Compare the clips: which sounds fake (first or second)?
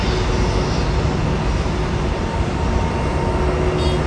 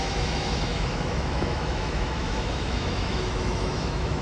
second